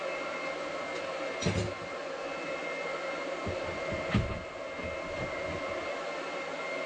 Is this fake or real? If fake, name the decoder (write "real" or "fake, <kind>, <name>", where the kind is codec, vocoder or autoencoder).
real